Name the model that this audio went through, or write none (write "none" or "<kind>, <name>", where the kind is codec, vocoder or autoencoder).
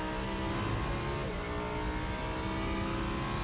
none